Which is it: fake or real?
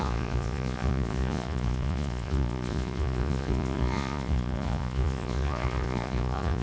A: fake